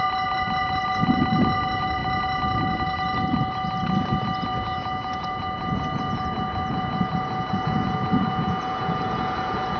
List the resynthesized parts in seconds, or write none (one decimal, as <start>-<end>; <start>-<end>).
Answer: 4.5-9.8